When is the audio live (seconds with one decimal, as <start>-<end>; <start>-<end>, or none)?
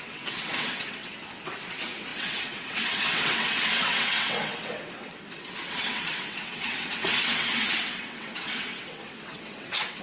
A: none